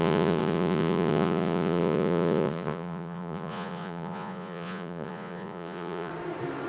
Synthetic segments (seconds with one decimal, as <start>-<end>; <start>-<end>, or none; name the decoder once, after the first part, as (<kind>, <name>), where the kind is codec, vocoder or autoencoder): 0.0-6.1 (vocoder, Vocos)